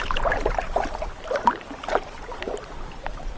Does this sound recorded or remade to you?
remade